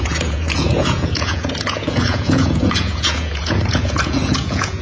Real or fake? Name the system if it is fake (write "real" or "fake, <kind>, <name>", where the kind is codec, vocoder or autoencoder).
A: fake, vocoder, Vocos